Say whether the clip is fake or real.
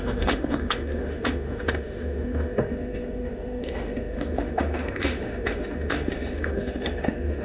fake